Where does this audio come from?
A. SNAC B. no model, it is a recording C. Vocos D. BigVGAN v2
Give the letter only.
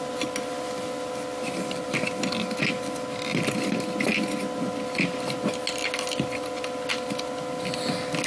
B